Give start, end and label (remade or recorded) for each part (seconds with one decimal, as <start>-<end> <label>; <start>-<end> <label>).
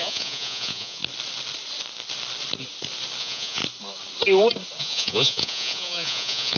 0.0-1.0 remade; 1.0-3.2 recorded; 3.2-3.6 remade; 3.6-4.8 recorded; 4.8-6.6 remade